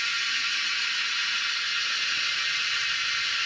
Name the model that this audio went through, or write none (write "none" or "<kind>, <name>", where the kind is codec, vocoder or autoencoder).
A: none